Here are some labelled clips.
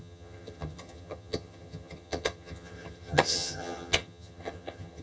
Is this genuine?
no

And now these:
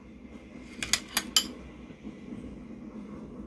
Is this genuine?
yes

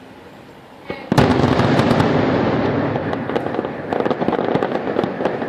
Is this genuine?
yes